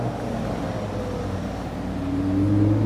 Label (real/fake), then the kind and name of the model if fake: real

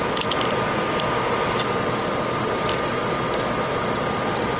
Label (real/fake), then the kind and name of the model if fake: real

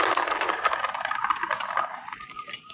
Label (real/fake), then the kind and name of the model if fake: real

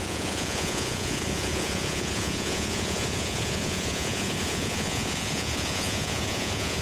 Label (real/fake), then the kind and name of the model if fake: fake, vocoder, Vocos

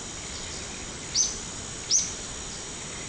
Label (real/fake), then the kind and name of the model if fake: real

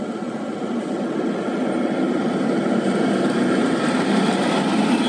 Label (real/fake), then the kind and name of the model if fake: real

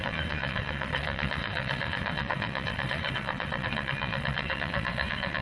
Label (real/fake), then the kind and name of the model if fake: fake, vocoder, WaveNeXt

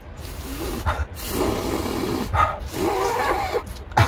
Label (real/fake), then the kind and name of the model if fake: real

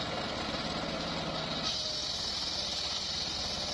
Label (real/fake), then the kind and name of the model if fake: real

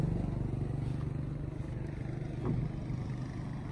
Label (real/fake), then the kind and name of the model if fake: real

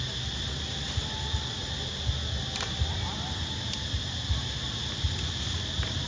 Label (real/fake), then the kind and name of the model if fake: real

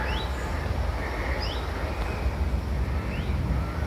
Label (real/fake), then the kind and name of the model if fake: real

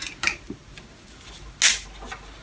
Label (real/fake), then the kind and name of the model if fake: real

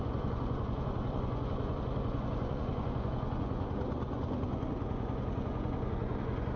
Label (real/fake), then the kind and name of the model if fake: fake, vocoder, Vocos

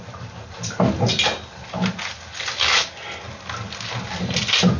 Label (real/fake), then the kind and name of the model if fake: real